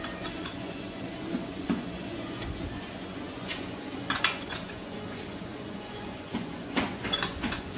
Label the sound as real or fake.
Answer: fake